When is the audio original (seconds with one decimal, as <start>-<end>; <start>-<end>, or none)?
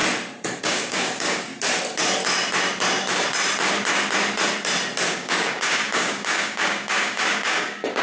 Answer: 0.0-0.6; 1.5-5.1